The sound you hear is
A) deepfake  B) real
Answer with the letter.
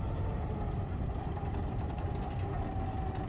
B